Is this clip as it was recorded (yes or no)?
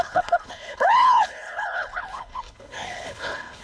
no